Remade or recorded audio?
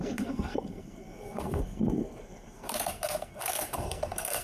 remade